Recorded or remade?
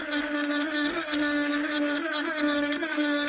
remade